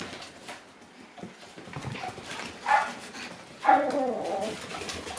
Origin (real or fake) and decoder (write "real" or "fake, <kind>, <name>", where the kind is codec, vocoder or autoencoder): real